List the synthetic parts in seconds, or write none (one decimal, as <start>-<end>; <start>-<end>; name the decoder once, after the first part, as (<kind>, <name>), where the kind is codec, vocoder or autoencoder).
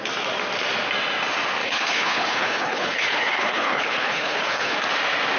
1.6-4.8 (codec, HILCodec)